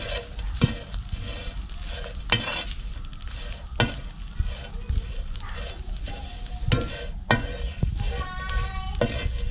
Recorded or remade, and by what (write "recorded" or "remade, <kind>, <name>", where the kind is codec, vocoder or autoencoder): recorded